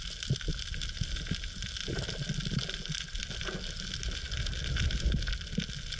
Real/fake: real